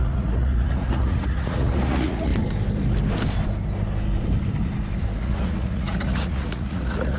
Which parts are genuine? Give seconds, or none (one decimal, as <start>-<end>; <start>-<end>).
2.3-5.2